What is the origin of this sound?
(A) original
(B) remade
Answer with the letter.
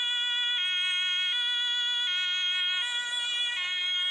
A